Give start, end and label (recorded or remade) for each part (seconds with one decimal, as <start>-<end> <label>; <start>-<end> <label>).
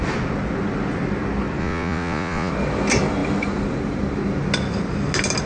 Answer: 0.0-1.6 recorded; 1.6-2.5 remade; 2.5-5.5 recorded